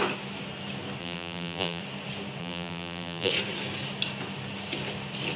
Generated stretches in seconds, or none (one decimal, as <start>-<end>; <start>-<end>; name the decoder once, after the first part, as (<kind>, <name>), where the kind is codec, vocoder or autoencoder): 1.0-1.8 (vocoder, BigVGAN v2); 2.4-3.3